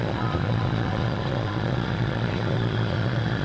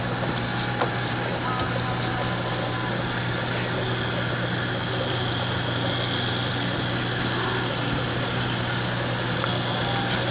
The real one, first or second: second